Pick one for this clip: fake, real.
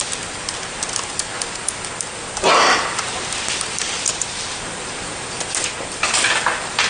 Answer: real